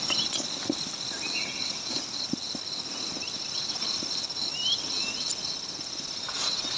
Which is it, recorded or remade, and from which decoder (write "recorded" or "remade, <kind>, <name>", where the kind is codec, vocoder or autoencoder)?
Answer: recorded